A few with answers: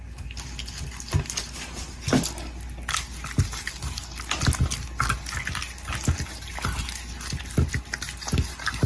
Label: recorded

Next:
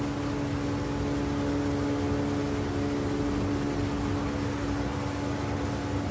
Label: recorded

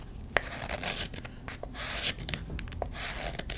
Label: recorded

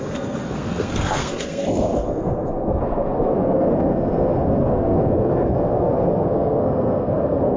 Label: remade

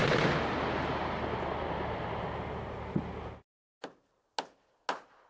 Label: recorded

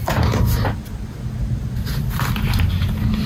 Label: recorded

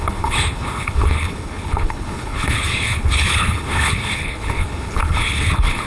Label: remade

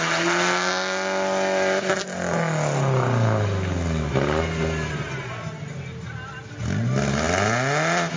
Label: recorded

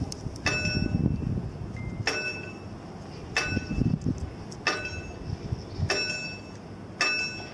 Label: recorded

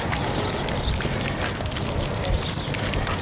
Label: recorded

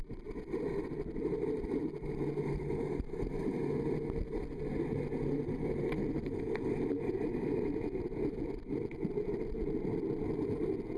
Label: recorded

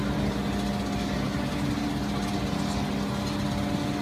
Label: recorded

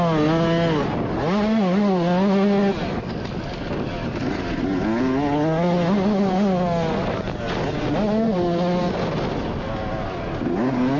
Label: recorded